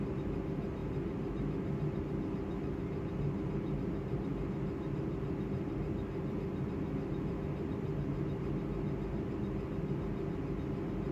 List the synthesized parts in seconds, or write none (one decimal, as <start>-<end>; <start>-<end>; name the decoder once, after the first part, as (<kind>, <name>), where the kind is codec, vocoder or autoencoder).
none